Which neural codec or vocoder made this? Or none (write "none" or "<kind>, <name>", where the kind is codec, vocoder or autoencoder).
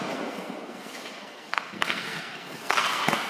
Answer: codec, SNAC